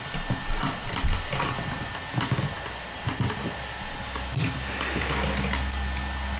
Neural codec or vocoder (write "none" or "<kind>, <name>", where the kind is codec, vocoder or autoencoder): none